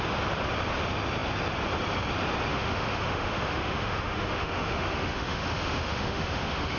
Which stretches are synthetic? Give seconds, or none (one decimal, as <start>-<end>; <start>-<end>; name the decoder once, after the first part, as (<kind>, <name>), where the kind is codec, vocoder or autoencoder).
2.5-6.8 (autoencoder, DAC-VAE)